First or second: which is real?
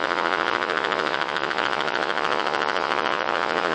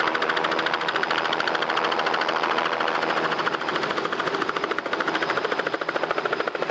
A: second